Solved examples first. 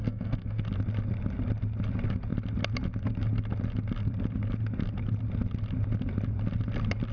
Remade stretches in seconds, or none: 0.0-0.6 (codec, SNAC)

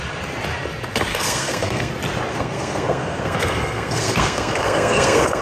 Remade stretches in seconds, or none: 1.1-1.9 (codec, SNAC); 2.3-5.4

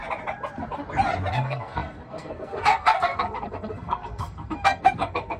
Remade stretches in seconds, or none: 1.3-5.4 (codec, SNAC)

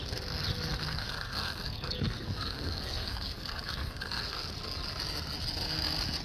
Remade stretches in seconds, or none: 0.8-4.5 (codec, SNAC)